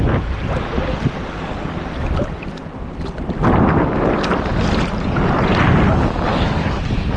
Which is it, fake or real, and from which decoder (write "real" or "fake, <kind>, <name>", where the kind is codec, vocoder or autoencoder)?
real